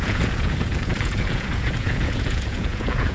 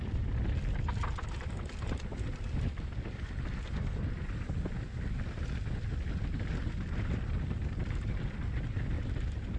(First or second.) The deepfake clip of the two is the first